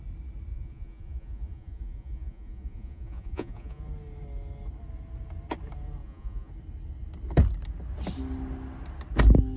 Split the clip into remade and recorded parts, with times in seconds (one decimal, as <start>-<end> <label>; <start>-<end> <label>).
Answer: 0.0-0.5 recorded; 0.5-3.8 remade; 3.8-6.0 recorded; 6.0-6.5 remade; 6.5-9.6 recorded